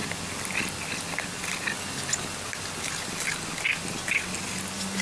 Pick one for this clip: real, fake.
real